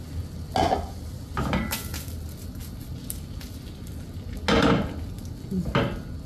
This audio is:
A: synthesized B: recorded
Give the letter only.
B